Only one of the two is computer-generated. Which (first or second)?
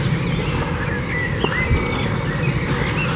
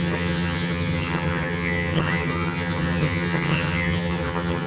second